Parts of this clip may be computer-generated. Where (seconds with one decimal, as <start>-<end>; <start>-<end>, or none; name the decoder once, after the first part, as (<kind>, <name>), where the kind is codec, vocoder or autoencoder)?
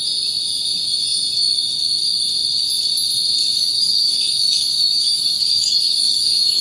3.4-6.6 (codec, DAC)